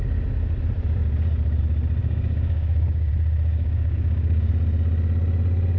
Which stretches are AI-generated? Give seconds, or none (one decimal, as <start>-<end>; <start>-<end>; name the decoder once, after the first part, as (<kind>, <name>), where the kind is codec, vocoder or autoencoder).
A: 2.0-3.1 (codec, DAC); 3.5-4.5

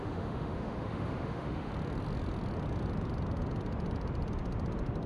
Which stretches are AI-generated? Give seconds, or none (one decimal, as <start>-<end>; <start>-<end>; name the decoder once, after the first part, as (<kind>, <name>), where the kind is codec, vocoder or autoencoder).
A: 0.0-1.7 (autoencoder, DAC-VAE)

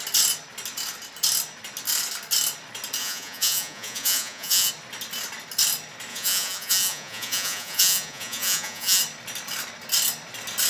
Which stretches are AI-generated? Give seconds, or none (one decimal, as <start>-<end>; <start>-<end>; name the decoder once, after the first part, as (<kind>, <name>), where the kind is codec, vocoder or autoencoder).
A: 3.0-4.7 (vocoder, Vocos); 6.1-9.0